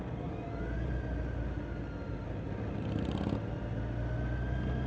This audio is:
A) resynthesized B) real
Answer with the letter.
B